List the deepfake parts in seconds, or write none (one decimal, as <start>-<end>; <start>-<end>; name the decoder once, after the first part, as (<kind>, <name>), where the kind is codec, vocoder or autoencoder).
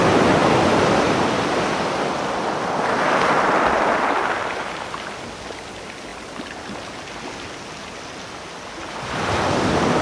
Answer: none